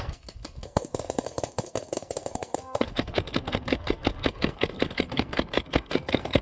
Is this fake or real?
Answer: fake